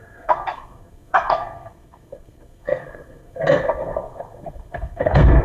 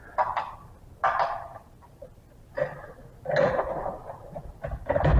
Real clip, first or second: second